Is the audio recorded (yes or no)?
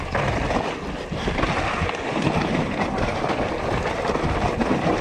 yes